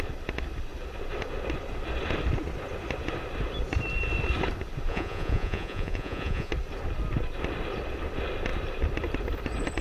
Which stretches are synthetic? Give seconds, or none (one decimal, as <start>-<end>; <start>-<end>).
4.9-6.5